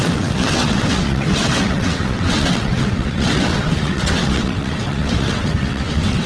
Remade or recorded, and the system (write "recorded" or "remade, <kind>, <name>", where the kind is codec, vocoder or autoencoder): remade, vocoder, WaveNeXt